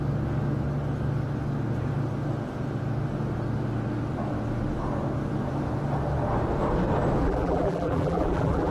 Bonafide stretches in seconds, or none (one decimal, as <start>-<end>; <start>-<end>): 0.0-7.2